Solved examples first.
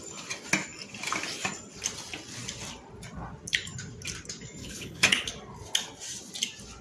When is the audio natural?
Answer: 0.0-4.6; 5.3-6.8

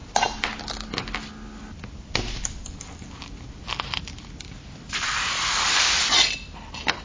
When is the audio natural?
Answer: 0.0-7.0

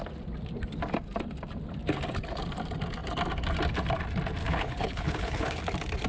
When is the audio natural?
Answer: 0.0-4.4; 5.6-6.1

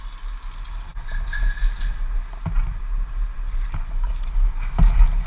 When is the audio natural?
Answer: 0.0-5.3